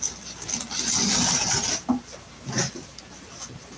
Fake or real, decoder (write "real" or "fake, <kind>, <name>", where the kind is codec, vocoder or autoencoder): real